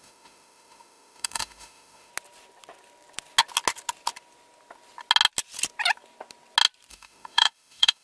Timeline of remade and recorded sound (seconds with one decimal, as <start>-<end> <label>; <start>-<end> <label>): 0.0-2.1 remade; 2.1-6.9 recorded; 6.9-8.0 remade